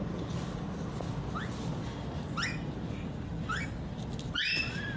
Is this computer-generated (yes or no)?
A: no